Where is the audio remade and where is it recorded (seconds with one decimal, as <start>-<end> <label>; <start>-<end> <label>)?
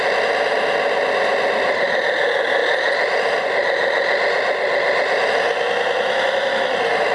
0.0-7.1 recorded